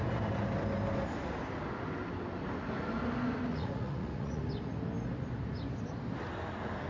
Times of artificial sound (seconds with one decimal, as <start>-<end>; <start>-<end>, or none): 3.5-4.4